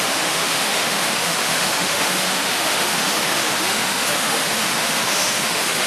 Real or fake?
fake